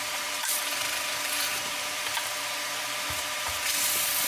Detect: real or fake fake